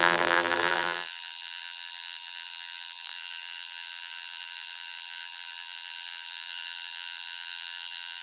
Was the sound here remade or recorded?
remade